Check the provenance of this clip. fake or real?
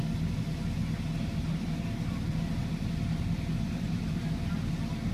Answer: real